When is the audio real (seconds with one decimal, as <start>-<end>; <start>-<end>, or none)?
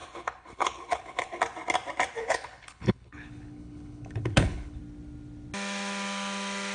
1.4-2.2; 4.8-6.7